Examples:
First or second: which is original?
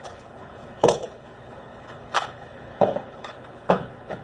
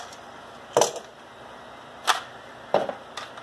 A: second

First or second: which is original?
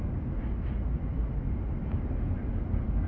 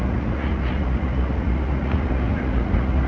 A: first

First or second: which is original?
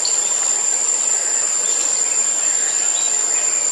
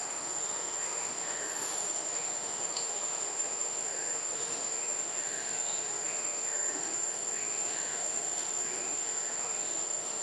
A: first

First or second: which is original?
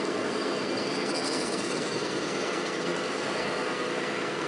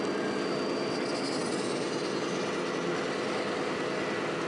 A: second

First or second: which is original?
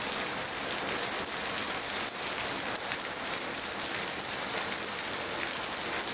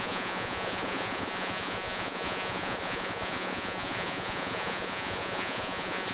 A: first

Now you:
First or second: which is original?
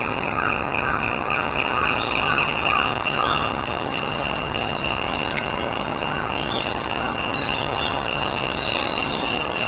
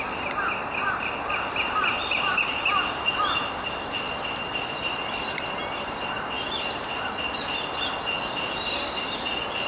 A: second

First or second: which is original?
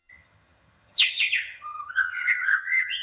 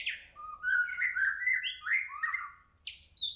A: second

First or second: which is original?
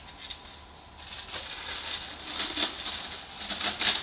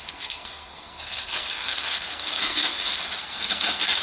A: first